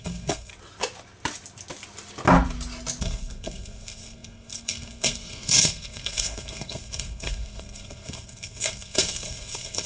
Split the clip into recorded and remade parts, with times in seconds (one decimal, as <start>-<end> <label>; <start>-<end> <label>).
0.0-0.5 remade; 0.5-3.0 recorded; 3.0-9.9 remade